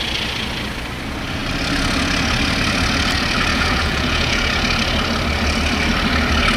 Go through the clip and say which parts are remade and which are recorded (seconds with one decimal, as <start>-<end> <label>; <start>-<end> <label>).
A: 0.0-3.5 recorded; 3.5-4.5 remade; 4.5-6.6 recorded